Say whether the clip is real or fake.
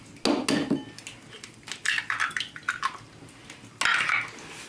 real